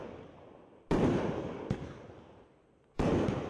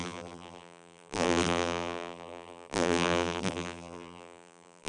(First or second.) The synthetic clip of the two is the second